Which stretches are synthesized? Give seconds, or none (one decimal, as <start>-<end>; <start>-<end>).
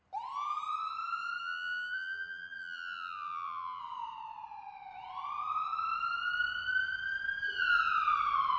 1.4-3.8